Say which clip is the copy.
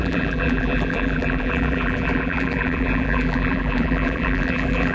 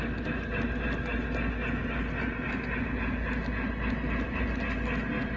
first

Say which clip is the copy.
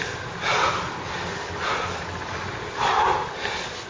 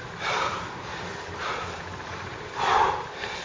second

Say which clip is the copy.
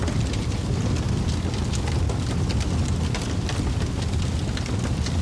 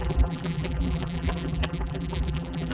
second